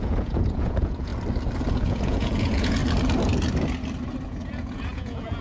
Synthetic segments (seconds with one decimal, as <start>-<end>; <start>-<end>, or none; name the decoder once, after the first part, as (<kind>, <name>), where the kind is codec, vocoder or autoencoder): 0.0-1.1 (vocoder, Vocos); 1.7-2.8; 4.3-5.4